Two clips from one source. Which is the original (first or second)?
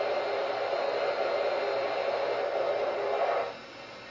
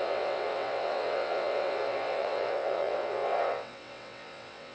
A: first